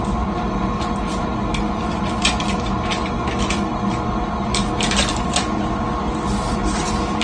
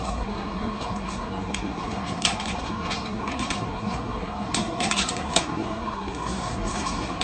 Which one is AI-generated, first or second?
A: second